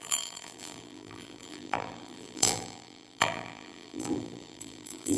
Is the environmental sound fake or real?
fake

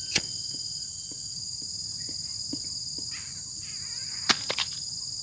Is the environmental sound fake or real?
real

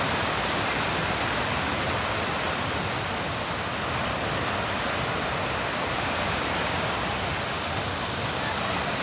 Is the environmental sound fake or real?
real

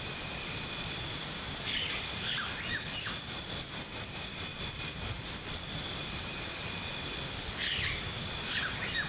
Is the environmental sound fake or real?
real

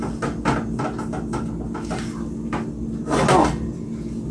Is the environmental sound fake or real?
real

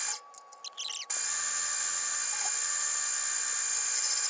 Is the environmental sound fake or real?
real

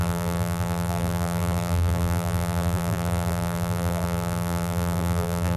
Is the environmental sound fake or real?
fake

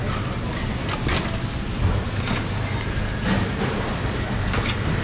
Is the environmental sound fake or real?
real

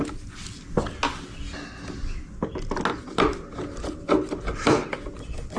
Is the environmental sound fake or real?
real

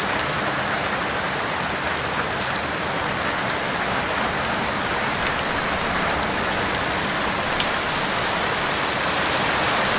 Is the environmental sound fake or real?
real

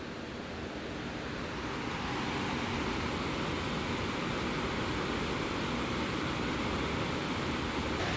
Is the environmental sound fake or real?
real